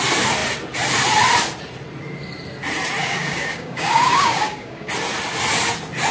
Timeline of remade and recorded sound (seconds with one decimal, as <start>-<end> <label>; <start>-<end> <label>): 0.0-3.0 recorded; 3.0-4.9 remade; 4.9-6.1 recorded